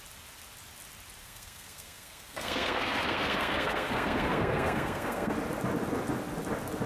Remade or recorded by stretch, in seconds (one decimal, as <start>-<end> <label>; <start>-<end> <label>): 0.0-1.2 recorded; 1.2-5.3 remade; 5.3-6.9 recorded